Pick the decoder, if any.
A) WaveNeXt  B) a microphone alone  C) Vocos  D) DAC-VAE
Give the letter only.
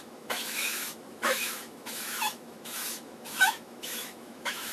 D